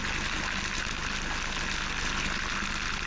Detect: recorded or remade recorded